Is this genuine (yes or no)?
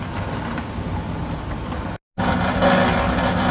yes